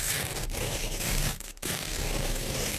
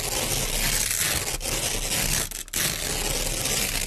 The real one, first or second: second